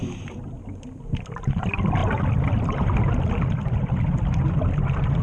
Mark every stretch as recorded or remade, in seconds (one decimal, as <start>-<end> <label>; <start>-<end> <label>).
0.0-5.2 recorded